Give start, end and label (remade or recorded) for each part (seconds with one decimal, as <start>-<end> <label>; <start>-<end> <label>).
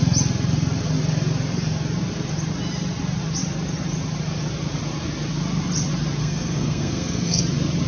0.0-6.2 recorded; 6.2-7.4 remade; 7.4-7.9 recorded